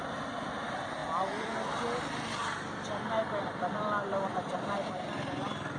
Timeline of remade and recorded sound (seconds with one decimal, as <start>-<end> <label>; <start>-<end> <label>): 0.0-4.3 recorded; 4.3-5.0 remade; 5.0-5.8 recorded